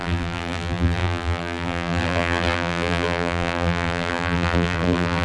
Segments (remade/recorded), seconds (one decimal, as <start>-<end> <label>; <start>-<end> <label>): 0.0-5.2 remade

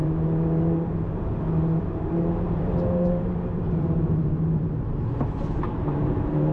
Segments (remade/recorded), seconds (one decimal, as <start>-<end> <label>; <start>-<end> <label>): 0.0-6.5 remade

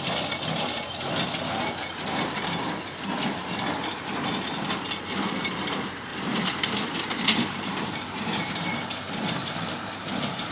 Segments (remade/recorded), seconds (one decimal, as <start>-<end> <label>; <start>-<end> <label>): 0.0-6.1 recorded; 6.1-10.5 remade

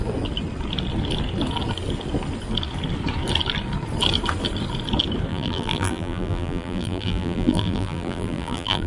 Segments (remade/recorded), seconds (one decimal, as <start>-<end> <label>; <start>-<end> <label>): 0.0-5.3 recorded; 5.3-8.9 remade